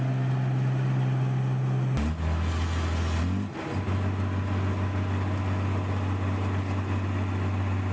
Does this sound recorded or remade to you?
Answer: recorded